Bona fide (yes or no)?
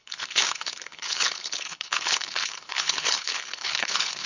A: no